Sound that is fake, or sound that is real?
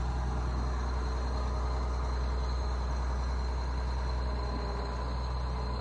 real